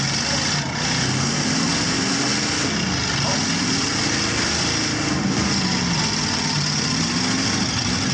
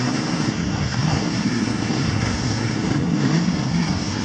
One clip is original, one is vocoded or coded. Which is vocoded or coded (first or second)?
second